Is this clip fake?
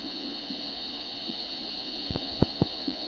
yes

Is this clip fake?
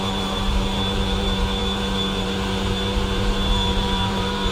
yes